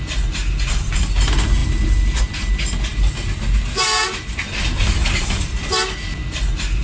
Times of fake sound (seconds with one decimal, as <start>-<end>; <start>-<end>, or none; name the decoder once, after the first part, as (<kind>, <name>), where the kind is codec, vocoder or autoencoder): none